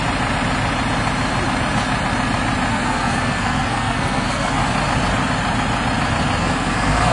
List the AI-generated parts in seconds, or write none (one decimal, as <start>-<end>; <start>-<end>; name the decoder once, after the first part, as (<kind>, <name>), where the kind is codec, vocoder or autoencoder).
2.7-4.6 (codec, SNAC); 6.4-7.1